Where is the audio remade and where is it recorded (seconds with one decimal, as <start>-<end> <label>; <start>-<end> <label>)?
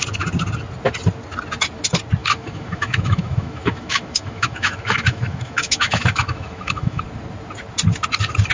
0.0-2.2 recorded; 2.2-7.0 remade; 7.0-8.5 recorded